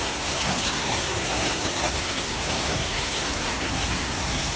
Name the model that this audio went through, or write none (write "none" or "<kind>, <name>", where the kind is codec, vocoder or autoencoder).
codec, SNAC